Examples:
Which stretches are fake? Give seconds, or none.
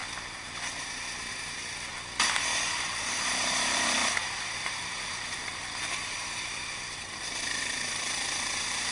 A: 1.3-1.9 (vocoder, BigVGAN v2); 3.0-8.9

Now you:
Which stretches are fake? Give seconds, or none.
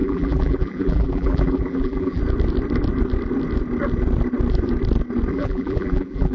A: 0.0-2.2 (vocoder, BigVGAN v2); 5.3-6.3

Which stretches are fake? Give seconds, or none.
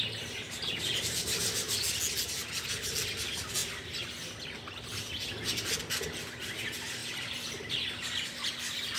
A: 3.6-5.1 (vocoder, BigVGAN v2); 7.0-8.5